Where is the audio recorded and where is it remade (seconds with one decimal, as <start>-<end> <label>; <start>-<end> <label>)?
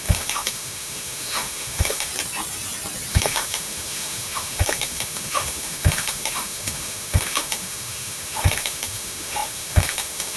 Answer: 0.0-2.1 remade; 2.1-3.1 recorded; 3.1-10.4 remade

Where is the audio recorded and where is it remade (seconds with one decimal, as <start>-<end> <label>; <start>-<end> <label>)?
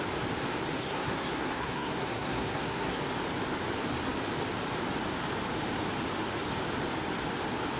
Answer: 0.0-0.8 recorded; 0.8-3.0 remade; 3.0-7.8 recorded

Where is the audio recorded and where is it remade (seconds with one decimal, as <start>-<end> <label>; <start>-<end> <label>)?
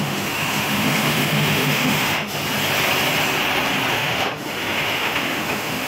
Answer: 0.0-2.4 remade; 2.4-3.9 recorded; 3.9-5.9 remade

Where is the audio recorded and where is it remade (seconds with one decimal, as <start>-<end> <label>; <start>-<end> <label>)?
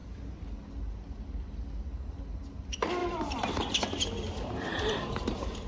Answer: 0.0-3.0 recorded; 3.0-3.6 remade; 3.6-4.7 recorded; 4.7-5.7 remade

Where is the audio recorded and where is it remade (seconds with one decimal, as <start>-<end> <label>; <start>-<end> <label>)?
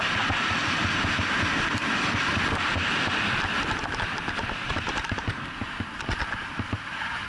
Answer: 0.0-7.3 recorded